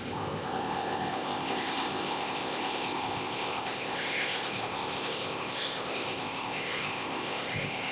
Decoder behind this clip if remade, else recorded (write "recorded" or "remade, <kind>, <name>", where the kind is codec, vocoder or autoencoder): remade, codec, ZipCodec